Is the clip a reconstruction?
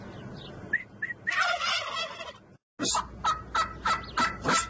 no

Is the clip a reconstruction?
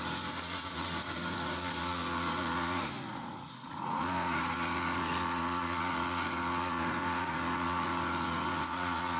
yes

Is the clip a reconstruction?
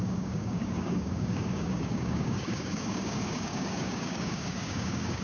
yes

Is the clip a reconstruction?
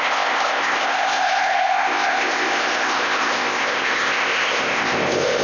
yes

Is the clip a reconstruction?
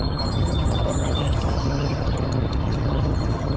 yes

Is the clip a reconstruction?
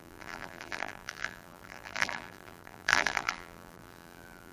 yes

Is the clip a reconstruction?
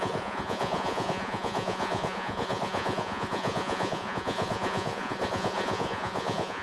yes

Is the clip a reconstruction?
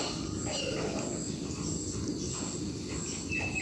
no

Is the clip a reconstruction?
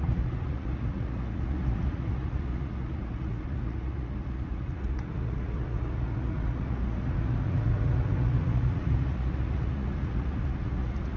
yes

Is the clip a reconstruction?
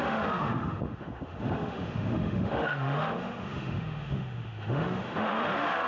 yes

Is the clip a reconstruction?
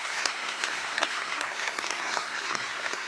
yes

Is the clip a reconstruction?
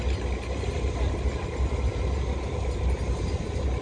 no